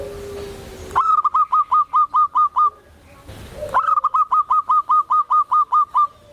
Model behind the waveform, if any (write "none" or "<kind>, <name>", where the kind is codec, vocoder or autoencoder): none